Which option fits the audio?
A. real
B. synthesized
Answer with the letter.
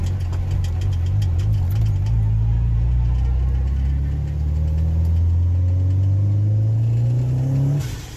A